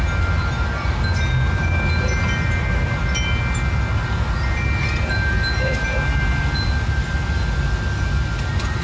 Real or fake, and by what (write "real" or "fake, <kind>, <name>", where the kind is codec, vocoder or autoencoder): real